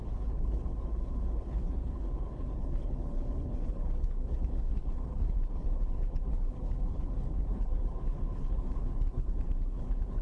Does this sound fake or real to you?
fake